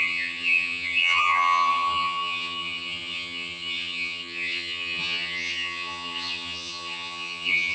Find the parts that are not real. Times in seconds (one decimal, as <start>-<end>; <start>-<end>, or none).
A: 0.0-7.7